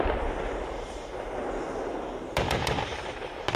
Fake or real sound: fake